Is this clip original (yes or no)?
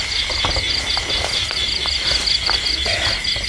yes